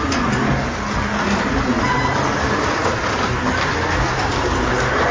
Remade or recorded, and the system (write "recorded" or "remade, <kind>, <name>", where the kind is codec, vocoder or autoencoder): recorded